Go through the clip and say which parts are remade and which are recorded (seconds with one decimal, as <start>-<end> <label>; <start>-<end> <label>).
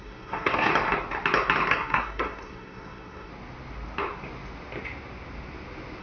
0.0-0.7 remade; 0.7-1.7 recorded; 1.7-3.3 remade; 3.3-6.0 recorded